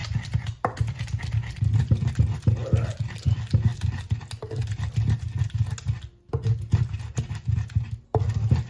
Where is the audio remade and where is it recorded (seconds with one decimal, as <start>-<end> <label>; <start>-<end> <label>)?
0.0-8.7 recorded

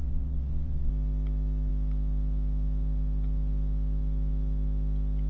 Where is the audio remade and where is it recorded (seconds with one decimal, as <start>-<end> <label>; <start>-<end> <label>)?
0.0-0.9 remade; 0.9-5.3 recorded

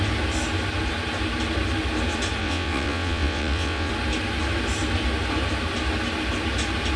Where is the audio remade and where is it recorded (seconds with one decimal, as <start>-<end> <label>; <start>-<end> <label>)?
0.0-2.4 recorded; 2.4-3.9 remade; 3.9-7.0 recorded

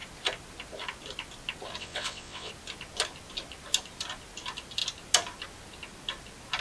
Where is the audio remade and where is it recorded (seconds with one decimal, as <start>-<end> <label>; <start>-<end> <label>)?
0.0-1.8 recorded; 1.8-2.5 remade; 2.5-6.6 recorded

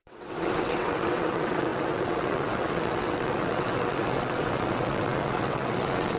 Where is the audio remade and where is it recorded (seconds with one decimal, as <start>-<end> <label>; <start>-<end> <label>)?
0.0-6.2 remade

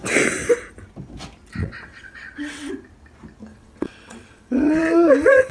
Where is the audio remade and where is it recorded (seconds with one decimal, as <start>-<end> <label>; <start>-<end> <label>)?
0.0-1.6 recorded; 1.6-2.7 remade; 2.7-3.5 recorded; 3.5-5.5 remade

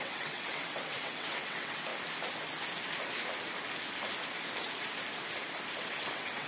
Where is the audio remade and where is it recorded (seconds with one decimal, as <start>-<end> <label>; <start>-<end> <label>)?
0.0-1.9 remade; 1.9-5.8 recorded; 5.8-6.5 remade